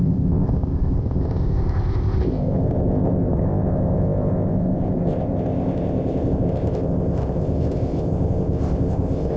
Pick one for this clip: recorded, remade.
remade